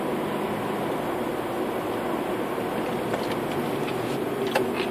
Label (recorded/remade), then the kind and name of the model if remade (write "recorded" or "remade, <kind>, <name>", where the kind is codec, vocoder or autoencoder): recorded